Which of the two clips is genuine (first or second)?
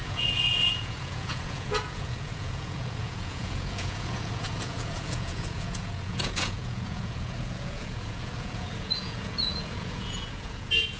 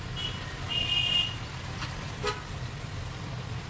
second